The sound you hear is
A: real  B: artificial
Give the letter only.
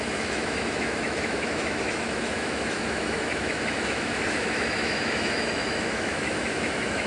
B